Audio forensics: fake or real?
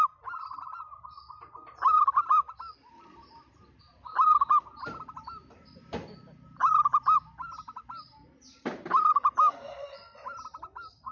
fake